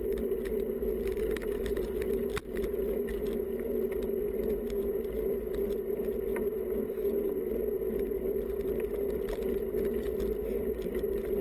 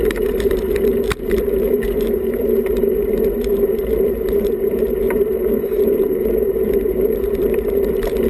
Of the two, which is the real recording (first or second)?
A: first